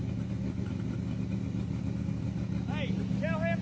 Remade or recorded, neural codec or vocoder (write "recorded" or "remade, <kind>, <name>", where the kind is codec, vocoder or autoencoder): recorded